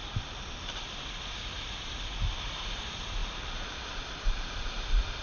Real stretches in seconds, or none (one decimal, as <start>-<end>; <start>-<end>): none